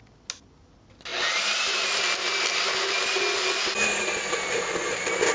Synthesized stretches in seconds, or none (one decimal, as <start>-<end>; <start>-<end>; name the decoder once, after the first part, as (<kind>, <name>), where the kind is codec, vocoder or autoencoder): none